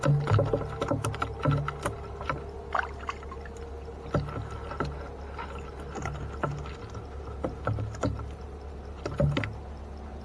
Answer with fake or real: real